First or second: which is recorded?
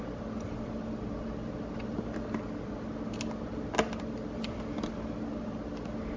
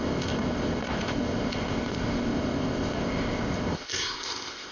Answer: first